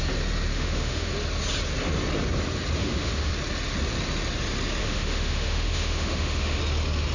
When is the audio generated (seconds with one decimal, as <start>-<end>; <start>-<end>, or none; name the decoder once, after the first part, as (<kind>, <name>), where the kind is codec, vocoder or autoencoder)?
0.5-1.1 (autoencoder, DAC-VAE); 2.8-3.3; 4.8-6.6